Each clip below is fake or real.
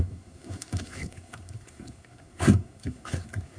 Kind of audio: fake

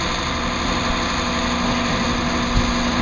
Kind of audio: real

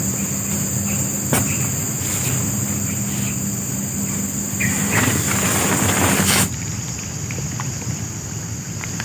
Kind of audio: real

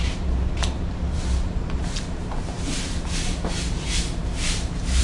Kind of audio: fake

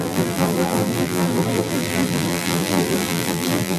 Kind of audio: fake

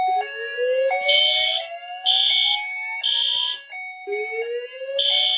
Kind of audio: real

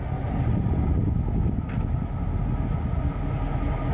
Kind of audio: real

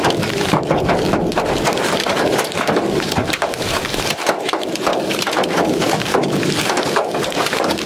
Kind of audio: fake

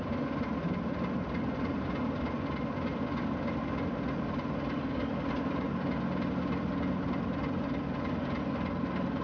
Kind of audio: real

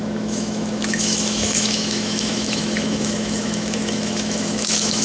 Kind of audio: fake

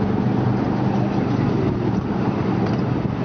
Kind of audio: real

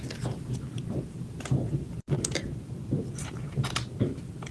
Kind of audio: fake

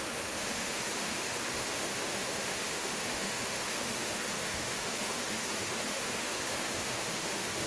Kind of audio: fake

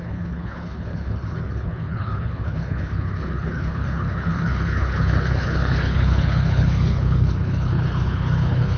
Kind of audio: fake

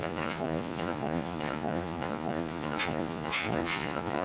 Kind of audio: fake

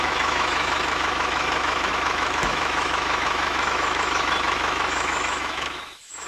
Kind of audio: fake